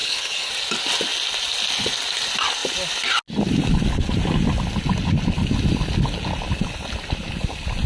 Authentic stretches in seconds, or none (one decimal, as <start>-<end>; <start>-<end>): 0.5-7.9